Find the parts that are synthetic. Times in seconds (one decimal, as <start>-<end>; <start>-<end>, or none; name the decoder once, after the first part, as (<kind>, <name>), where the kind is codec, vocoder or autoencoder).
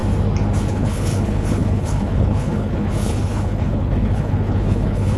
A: 0.7-5.2 (codec, HILCodec)